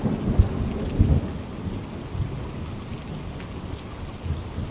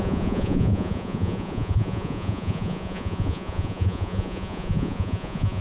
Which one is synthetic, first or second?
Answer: second